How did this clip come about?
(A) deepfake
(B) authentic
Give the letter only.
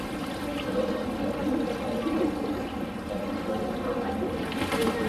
B